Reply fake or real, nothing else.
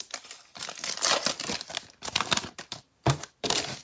fake